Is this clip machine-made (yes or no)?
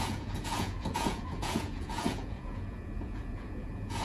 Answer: yes